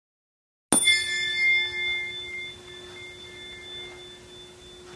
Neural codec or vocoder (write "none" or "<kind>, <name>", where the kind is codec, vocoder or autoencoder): none